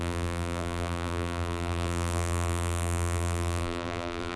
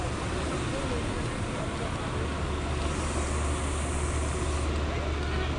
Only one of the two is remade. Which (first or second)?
first